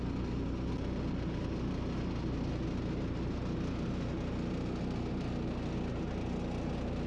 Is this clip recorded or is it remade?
recorded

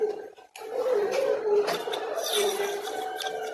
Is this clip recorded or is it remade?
recorded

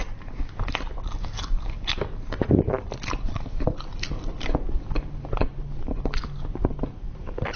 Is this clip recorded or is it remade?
recorded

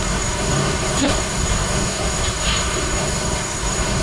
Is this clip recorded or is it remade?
remade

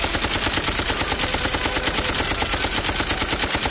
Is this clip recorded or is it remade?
recorded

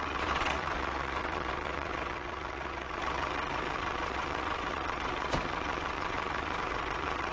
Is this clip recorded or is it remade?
remade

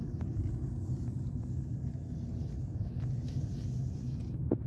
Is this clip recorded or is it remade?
recorded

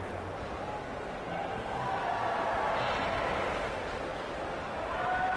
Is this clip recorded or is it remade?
recorded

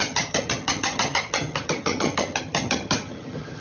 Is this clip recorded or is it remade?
remade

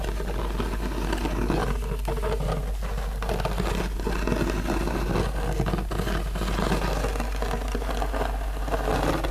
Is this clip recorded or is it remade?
recorded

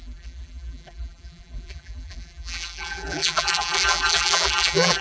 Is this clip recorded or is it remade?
remade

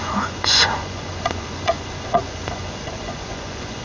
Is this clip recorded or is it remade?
remade